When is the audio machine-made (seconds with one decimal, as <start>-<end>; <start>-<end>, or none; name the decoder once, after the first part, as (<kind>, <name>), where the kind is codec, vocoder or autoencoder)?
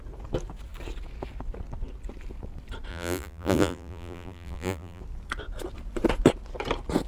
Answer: 2.9-5.0 (vocoder, BigVGAN v2)